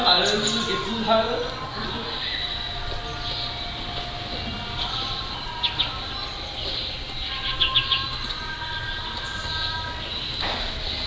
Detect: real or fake real